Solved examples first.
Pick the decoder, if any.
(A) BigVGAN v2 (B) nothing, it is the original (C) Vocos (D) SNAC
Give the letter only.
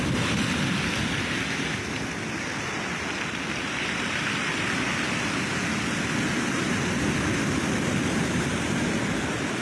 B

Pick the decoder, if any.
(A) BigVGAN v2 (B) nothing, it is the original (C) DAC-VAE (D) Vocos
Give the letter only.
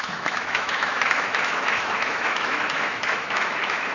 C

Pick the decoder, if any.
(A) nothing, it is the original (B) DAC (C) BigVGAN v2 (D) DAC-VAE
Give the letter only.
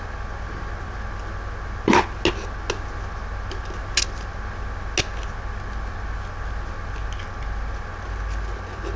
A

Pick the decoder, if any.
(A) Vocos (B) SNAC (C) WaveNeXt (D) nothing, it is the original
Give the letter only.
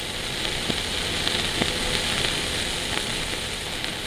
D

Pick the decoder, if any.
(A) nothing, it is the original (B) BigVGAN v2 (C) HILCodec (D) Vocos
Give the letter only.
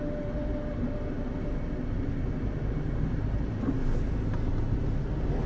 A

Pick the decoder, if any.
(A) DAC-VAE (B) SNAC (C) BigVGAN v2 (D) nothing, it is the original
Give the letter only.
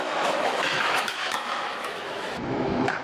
A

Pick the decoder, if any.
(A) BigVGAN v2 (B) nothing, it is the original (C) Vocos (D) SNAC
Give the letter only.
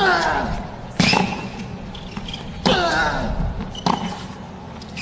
B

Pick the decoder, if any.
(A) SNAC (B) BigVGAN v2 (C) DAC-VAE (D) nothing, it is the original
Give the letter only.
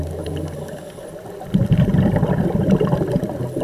D